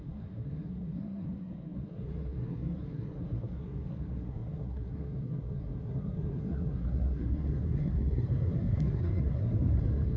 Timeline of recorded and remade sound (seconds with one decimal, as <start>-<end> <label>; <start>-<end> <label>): 0.0-10.2 remade